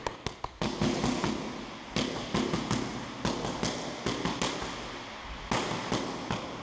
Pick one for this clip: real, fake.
real